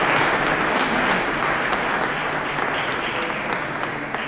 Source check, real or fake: real